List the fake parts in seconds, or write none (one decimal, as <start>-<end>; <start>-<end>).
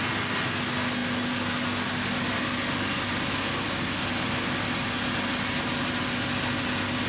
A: none